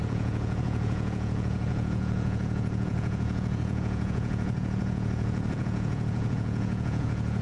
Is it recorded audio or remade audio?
remade